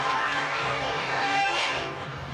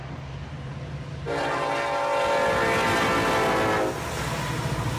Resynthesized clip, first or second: first